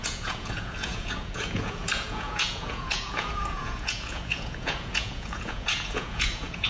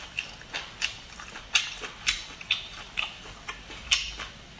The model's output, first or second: first